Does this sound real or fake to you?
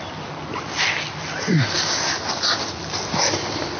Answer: real